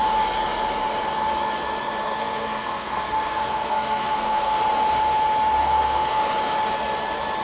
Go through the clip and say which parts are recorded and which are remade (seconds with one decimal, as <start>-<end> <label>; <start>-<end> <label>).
0.0-2.2 recorded; 2.2-4.6 remade; 4.6-5.6 recorded; 5.6-6.2 remade; 6.2-7.4 recorded